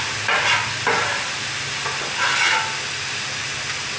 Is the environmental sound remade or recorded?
recorded